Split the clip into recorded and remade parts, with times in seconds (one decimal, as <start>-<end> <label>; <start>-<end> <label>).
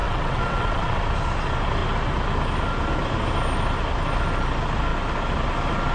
0.0-1.0 remade; 1.0-5.9 recorded